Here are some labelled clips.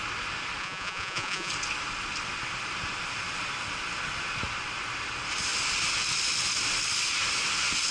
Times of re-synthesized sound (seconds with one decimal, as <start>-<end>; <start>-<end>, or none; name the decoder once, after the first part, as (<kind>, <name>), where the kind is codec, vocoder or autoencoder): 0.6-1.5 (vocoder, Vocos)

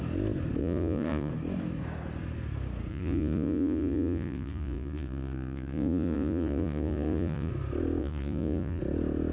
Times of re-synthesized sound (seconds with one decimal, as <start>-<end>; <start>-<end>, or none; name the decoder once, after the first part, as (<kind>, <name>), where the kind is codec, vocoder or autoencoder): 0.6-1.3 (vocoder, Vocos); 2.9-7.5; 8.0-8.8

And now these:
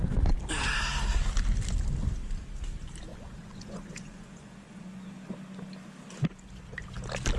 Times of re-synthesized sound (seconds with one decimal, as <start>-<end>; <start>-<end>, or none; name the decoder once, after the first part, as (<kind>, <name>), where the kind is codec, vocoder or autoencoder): 3.1-5.1 (vocoder, Vocos)